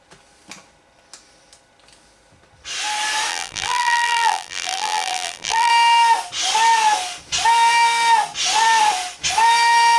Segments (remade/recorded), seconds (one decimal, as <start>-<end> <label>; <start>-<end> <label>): 0.0-3.3 recorded; 3.3-5.7 remade; 5.7-10.0 recorded